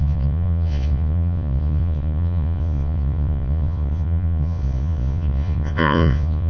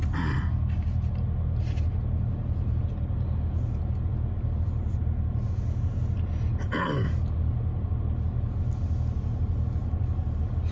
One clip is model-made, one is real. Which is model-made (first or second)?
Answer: first